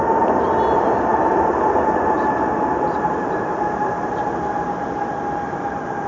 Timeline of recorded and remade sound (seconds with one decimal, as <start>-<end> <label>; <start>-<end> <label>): 0.0-6.1 recorded